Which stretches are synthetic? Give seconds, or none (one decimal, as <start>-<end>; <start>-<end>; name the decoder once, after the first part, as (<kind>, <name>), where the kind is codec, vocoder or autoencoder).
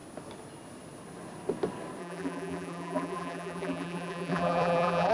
2.0-5.1 (vocoder, BigVGAN v2)